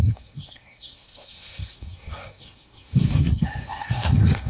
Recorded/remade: remade